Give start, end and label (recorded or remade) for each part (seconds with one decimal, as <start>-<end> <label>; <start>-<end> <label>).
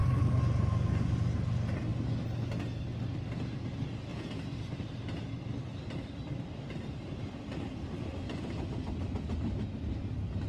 0.0-1.9 remade; 1.9-2.8 recorded; 2.8-10.5 remade